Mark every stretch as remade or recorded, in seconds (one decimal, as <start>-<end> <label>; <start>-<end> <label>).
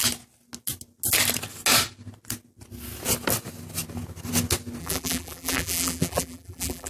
0.0-4.8 recorded; 4.8-6.9 remade